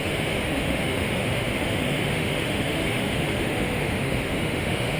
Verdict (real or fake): fake